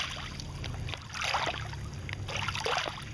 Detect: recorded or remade recorded